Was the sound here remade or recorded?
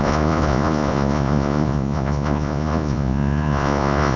remade